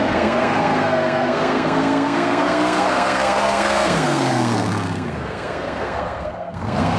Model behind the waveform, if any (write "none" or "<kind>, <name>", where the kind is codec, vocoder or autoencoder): codec, SNAC